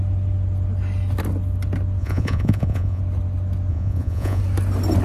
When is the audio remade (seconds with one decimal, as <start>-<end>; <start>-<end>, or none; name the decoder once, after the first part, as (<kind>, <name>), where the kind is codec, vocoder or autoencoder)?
2.0-3.0 (vocoder, Vocos); 3.7-4.4